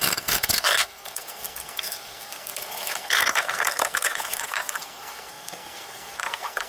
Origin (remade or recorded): remade